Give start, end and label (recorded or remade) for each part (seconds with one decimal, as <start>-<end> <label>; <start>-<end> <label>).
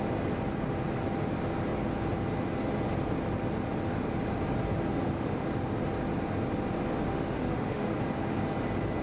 0.0-4.9 recorded; 4.9-5.5 remade; 5.5-7.1 recorded; 7.1-8.0 remade; 8.0-9.0 recorded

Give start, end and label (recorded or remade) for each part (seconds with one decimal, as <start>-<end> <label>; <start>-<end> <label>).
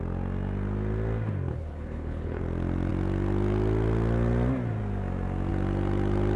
0.0-1.5 recorded; 1.5-2.4 remade; 2.4-6.4 recorded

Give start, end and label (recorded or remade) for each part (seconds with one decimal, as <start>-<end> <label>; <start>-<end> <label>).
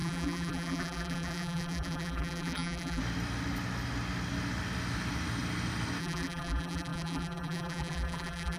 0.0-3.0 remade; 3.0-6.0 recorded; 6.0-8.6 remade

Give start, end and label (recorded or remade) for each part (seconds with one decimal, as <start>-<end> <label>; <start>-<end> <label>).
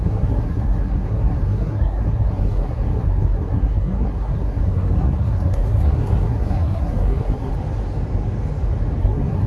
0.0-7.5 remade; 7.5-9.0 recorded; 9.0-9.5 remade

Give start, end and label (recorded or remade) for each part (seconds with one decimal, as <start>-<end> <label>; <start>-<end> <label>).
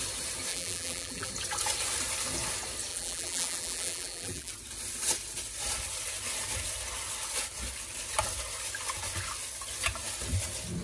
0.0-0.5 recorded; 0.5-1.3 remade; 1.3-2.9 recorded; 2.9-4.5 remade; 4.5-10.8 recorded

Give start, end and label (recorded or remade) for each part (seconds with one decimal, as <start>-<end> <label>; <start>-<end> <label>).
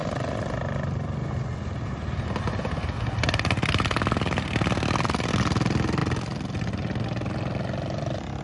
0.0-8.4 recorded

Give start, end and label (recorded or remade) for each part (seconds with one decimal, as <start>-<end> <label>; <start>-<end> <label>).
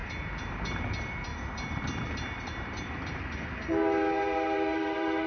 0.0-0.5 recorded; 0.5-5.3 remade